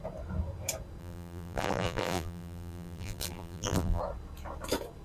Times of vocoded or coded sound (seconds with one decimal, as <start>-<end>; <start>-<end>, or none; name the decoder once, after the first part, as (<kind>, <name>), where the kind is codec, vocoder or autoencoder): 1.0-4.0 (vocoder, BigVGAN v2)